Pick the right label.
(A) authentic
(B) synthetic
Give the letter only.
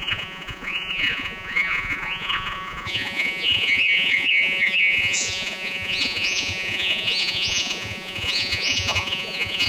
B